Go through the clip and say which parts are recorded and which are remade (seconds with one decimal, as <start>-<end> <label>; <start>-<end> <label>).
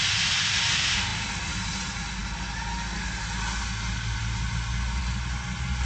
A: 0.0-5.8 recorded